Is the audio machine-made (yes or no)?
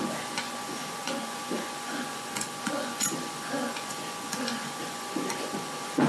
yes